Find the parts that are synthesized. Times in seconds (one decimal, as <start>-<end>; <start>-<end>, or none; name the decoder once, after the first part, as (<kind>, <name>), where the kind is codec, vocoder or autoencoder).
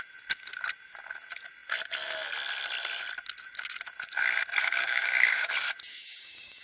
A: 4.6-5.5 (codec, DAC); 5.9-6.6